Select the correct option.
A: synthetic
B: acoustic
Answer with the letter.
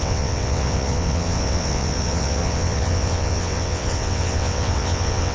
A